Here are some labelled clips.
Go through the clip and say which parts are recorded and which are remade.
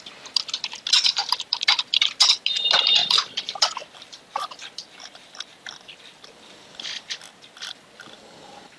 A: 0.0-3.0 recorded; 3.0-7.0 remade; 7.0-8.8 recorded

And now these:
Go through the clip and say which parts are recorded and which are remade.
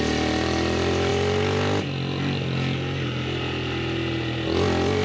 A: 0.0-5.0 recorded